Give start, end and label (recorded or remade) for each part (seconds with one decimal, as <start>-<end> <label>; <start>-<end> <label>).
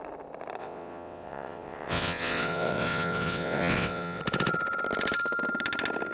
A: 0.0-0.6 recorded; 0.6-4.2 remade; 4.2-6.1 recorded